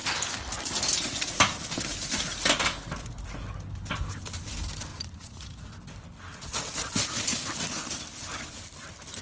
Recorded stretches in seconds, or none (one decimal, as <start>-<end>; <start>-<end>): 0.0-4.9; 5.7-9.2